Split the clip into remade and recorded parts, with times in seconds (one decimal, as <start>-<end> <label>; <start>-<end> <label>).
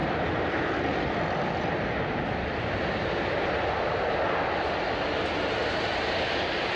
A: 0.0-6.8 recorded